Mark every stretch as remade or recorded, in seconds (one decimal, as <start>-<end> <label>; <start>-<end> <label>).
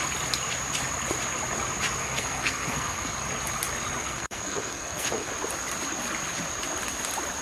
0.0-2.0 recorded; 2.0-3.1 remade; 3.1-4.0 recorded; 4.0-5.3 remade; 5.3-7.4 recorded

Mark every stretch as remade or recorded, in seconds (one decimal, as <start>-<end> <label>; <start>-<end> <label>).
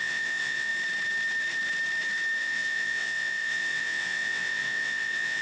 0.0-0.7 remade; 0.7-2.4 recorded; 2.4-5.4 remade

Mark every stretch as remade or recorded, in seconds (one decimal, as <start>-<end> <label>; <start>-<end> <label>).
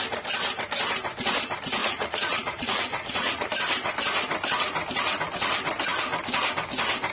0.0-1.8 recorded; 1.8-3.5 remade; 3.5-7.1 recorded